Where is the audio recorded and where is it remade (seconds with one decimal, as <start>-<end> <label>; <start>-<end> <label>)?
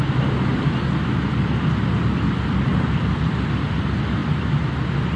0.0-2.7 recorded; 2.7-3.3 remade; 3.3-5.2 recorded